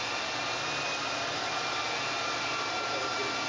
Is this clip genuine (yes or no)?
yes